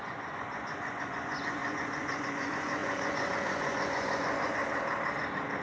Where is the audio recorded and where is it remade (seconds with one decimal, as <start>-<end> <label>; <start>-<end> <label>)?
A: 0.0-4.6 remade; 4.6-5.6 recorded